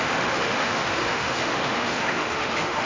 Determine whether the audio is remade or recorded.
remade